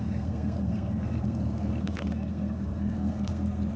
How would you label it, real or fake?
fake